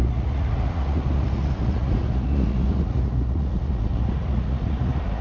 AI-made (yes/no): yes